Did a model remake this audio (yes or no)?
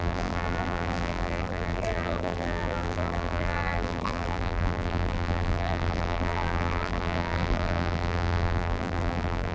yes